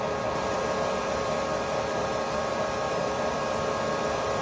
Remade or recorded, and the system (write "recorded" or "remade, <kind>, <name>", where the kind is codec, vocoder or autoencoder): remade, vocoder, BigVGAN v2